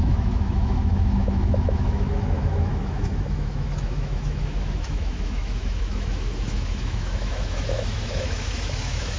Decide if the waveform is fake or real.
fake